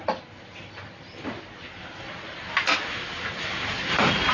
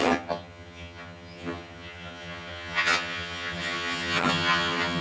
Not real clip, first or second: second